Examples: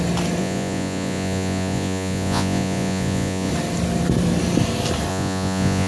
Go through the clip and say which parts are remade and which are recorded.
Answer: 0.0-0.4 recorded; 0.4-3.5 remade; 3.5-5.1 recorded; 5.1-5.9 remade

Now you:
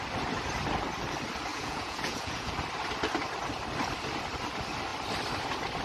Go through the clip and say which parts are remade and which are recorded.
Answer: 0.0-1.5 recorded; 1.5-2.5 remade; 2.5-5.8 recorded

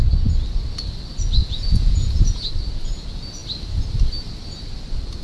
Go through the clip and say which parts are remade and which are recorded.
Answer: 0.0-1.4 recorded; 1.4-2.5 remade; 2.5-5.2 recorded

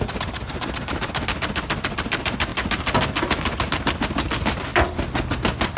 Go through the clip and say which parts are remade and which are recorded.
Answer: 0.0-5.8 recorded

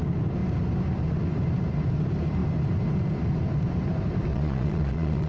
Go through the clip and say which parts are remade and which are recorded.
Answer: 0.0-4.3 recorded; 4.3-5.3 remade